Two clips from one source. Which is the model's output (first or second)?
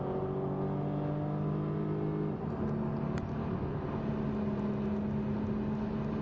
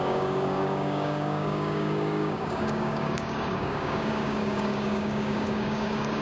second